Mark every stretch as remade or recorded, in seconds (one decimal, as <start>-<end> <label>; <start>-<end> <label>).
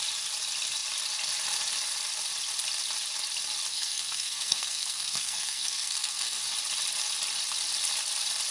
0.0-3.7 recorded; 3.7-6.4 remade; 6.4-8.5 recorded